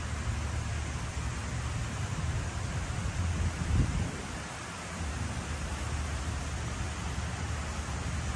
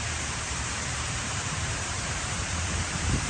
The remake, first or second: second